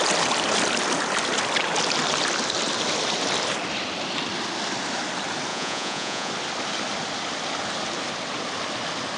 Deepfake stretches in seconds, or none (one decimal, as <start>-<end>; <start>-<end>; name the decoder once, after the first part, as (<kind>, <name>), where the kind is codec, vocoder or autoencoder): 5.5-6.3 (vocoder, Vocos)